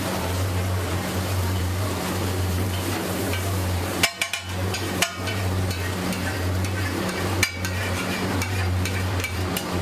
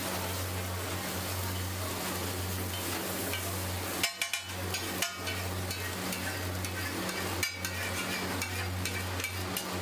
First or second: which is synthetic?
first